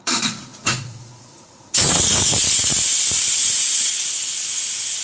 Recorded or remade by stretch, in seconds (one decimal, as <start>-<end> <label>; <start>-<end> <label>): 0.0-2.4 remade; 2.4-3.3 recorded; 3.3-5.0 remade